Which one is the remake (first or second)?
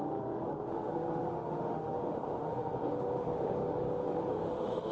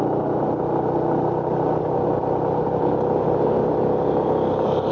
first